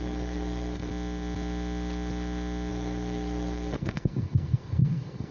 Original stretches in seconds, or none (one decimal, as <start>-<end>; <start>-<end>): 0.9-2.7